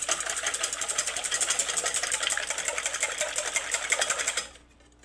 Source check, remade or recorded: recorded